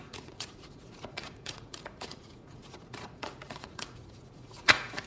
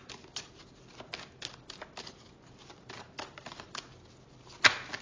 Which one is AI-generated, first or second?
first